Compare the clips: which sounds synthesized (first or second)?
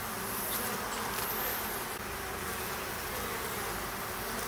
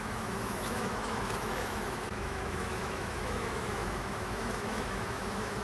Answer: second